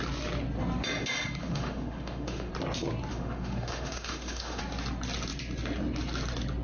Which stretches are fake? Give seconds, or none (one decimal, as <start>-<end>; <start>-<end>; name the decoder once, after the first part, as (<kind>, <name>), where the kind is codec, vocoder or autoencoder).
1.4-2.5 (autoencoder, DAC-VAE); 3.1-4.6